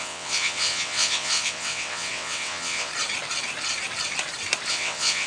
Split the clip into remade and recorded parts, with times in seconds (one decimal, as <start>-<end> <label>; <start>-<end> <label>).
0.0-2.9 remade; 2.9-4.7 recorded; 4.7-5.3 remade